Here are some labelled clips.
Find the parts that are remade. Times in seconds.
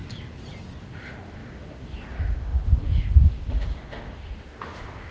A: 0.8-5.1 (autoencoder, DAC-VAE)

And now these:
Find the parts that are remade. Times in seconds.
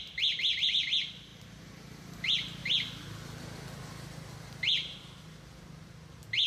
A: none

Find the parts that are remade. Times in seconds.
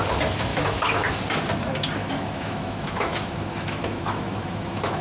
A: 0.5-1.2 (autoencoder, DAC-VAE); 2.0-5.0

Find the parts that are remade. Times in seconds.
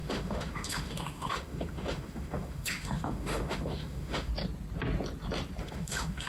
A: 0.0-4.3 (autoencoder, DAC-VAE); 5.6-6.3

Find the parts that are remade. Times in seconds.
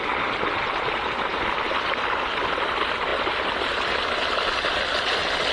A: none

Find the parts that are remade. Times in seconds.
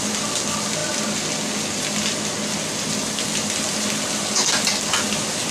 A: none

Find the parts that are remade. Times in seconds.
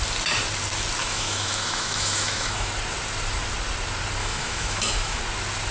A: 1.0-2.7 (autoencoder, DAC-VAE); 4.2-5.2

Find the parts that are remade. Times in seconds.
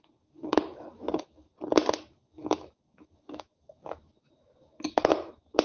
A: 0.0-1.5 (autoencoder, DAC-VAE); 2.1-5.6